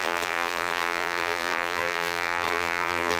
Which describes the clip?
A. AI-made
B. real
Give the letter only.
A